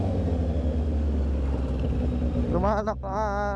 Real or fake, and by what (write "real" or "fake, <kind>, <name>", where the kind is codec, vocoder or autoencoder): real